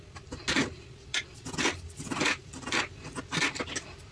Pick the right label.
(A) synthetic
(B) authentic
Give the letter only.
B